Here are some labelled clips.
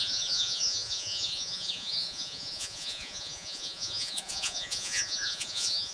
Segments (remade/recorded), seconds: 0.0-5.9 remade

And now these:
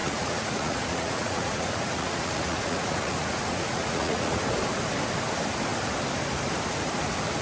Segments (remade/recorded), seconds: 0.0-4.4 remade; 4.4-7.4 recorded

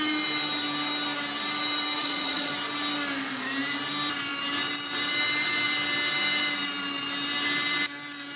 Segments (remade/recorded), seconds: 0.0-2.0 recorded; 2.0-2.5 remade; 2.5-8.4 recorded